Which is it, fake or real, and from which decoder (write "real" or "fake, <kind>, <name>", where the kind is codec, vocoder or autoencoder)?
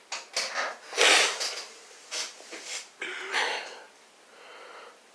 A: real